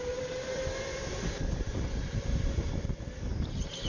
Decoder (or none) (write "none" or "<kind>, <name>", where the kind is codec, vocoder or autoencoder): vocoder, BigVGAN v2